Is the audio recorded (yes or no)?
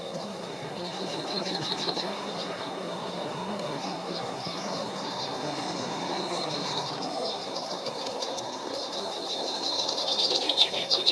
no